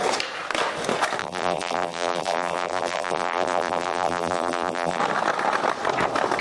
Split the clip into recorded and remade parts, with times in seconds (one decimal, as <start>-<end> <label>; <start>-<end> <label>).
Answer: 0.0-1.2 recorded; 1.2-5.0 remade; 5.0-6.4 recorded